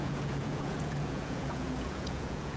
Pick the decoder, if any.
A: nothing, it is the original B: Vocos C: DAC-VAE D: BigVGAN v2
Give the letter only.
B